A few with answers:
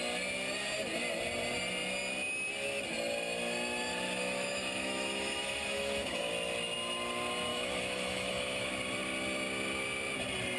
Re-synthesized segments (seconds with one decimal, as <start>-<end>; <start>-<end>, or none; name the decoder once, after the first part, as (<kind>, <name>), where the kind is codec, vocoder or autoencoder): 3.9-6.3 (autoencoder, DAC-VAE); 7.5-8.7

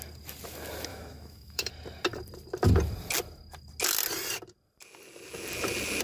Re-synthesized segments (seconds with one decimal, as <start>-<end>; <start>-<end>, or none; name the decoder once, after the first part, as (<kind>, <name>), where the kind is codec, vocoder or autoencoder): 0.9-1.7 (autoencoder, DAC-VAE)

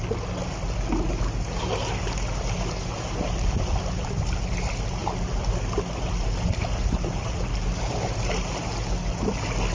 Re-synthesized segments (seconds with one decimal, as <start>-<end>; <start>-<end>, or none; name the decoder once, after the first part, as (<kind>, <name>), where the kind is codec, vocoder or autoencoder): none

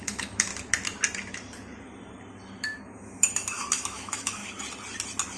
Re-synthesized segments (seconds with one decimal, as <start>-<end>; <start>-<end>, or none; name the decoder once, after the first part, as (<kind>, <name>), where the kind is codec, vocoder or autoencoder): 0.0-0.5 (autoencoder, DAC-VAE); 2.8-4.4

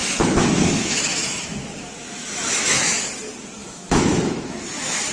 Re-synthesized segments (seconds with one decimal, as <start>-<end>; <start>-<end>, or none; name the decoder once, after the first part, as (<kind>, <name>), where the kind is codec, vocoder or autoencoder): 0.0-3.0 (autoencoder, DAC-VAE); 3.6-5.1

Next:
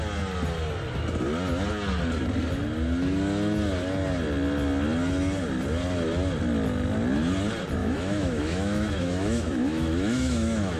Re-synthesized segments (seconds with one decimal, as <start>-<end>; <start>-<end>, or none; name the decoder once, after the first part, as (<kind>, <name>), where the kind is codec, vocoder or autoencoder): 7.8-10.8 (autoencoder, DAC-VAE)

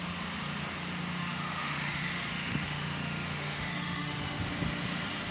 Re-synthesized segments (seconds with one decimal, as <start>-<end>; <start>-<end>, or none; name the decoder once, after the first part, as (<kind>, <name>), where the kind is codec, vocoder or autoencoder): 1.2-4.4 (autoencoder, DAC-VAE)